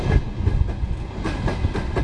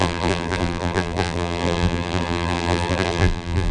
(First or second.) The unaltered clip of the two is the first